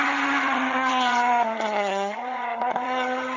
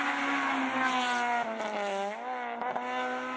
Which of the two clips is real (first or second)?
second